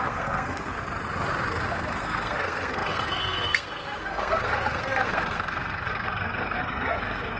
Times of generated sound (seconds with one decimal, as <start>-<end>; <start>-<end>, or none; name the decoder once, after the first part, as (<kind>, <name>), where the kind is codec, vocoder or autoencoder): 0.0-0.7 (codec, SNAC); 1.7-7.4